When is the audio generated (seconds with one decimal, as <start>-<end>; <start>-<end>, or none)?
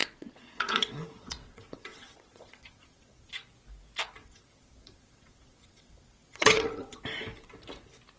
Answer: 0.0-3.3; 4.2-7.0